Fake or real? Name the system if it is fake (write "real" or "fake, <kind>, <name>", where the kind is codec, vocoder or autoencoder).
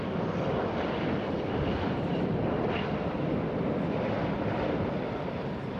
fake, vocoder, BigVGAN v2